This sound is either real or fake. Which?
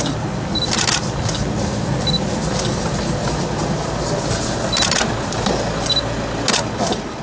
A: real